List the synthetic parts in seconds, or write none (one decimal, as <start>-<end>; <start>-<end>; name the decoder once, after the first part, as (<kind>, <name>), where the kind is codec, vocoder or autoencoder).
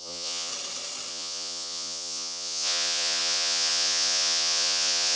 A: 0.0-0.5 (vocoder, Vocos); 1.1-5.2